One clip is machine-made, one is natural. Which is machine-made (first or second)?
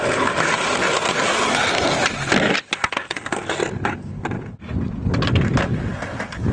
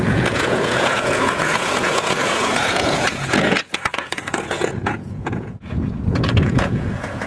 second